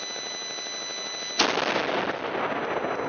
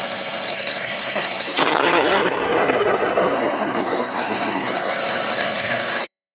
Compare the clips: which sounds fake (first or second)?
second